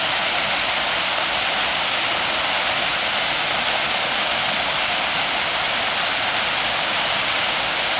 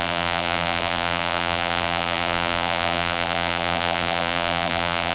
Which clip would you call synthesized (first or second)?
second